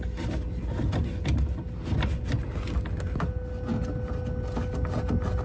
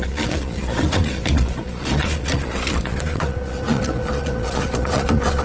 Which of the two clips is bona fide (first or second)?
first